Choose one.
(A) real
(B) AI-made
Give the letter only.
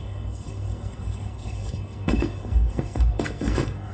B